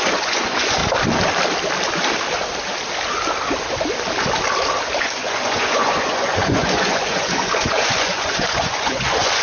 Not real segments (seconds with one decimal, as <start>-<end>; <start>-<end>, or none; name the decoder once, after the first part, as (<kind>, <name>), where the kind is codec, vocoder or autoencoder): 0.0-0.8 (vocoder, Vocos); 5.0-9.4